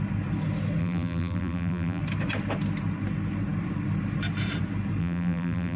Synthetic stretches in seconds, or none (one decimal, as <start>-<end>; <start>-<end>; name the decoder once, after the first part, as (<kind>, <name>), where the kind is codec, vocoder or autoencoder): 0.8-2.0 (vocoder, BigVGAN v2); 5.0-5.8